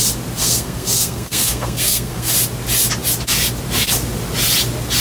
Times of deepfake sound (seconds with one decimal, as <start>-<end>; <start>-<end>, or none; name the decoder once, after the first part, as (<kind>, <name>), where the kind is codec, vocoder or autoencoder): 0.4-2.3 (codec, SNAC)